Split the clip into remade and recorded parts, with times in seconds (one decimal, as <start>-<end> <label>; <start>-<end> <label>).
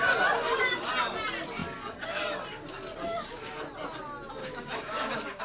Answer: 0.0-0.4 recorded; 0.4-0.9 remade; 0.9-4.4 recorded; 4.4-5.4 remade